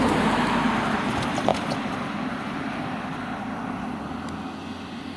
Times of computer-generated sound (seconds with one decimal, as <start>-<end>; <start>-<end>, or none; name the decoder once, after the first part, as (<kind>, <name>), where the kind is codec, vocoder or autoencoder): 1.5-4.1 (vocoder, BigVGAN v2)